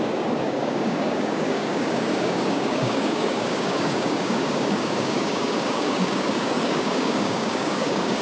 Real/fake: fake